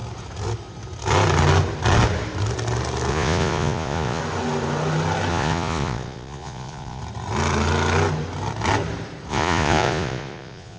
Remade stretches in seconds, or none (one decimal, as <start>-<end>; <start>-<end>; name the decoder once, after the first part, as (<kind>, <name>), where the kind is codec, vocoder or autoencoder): 3.1-4.2 (vocoder, Vocos); 5.3-7.0; 9.3-10.8